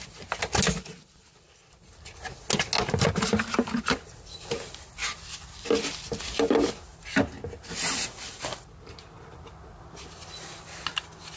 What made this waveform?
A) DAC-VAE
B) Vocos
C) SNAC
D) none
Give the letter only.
D